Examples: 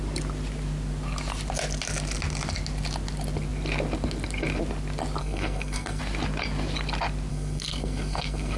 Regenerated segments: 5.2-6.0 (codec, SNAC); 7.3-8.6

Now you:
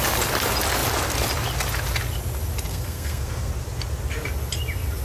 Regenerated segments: 2.7-3.5 (codec, SNAC)

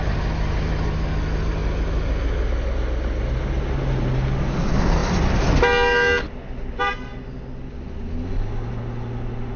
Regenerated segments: none

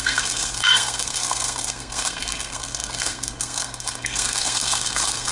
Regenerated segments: 0.0-5.3 (codec, SNAC)

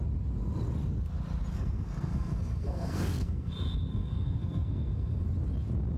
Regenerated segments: 1.5-3.5 (codec, SNAC); 3.9-5.2

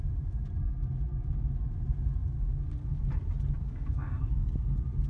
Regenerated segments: 3.6-4.1 (codec, SNAC)

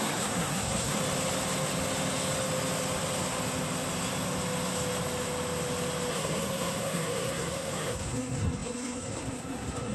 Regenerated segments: 0.0-1.0 (codec, SNAC); 6.1-9.9

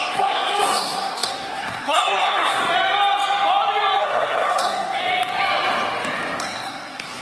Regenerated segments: 0.0-2.6 (codec, SNAC); 4.0-5.0; 6.4-7.2